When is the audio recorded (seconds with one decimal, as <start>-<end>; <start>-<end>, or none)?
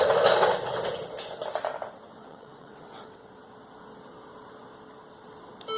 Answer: 0.0-2.2; 3.3-5.8